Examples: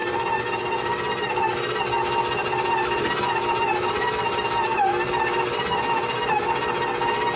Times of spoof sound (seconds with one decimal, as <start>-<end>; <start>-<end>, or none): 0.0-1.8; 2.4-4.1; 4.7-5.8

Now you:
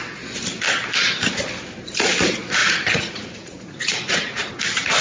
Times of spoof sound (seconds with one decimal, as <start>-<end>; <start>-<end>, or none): 2.6-4.5

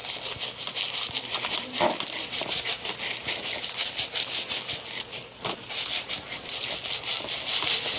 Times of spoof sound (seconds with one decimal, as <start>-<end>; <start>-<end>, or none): none

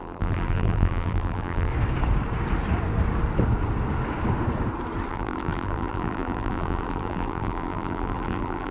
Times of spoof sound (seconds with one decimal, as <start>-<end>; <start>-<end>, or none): 0.0-1.7; 5.1-8.7

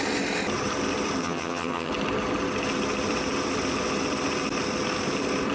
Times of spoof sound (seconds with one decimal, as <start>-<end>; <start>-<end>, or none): 1.2-1.9